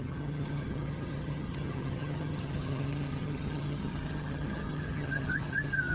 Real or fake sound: fake